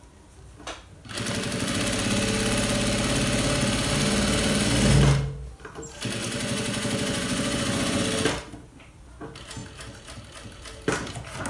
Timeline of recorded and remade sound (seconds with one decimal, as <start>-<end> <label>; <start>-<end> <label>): 0.0-6.2 recorded; 6.2-8.0 remade; 8.0-11.5 recorded